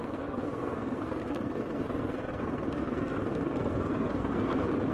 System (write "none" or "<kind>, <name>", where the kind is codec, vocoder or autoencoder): codec, SNAC